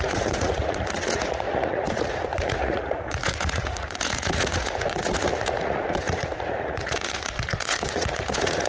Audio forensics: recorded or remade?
remade